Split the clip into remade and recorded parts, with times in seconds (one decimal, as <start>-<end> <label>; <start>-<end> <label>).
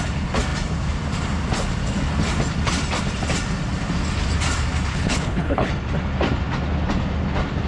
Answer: 0.0-4.9 recorded; 4.9-5.7 remade; 5.7-7.7 recorded